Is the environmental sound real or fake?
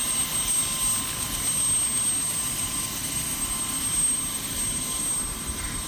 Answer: real